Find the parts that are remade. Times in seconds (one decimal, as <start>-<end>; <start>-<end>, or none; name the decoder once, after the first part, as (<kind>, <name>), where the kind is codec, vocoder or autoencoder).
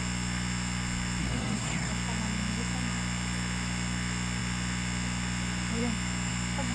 1.2-1.9 (codec, SNAC)